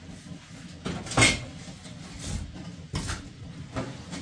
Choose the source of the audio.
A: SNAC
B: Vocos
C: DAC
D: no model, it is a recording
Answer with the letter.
D